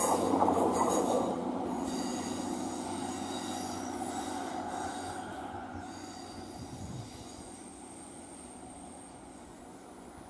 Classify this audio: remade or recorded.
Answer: remade